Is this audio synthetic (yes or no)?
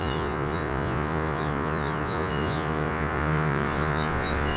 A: yes